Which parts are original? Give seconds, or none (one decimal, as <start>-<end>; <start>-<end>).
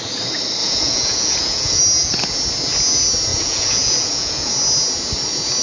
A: 0.0-0.6; 1.8-3.3; 4.5-5.6